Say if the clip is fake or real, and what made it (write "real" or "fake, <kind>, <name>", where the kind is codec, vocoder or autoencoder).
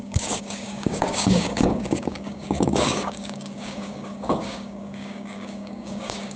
fake, codec, DAC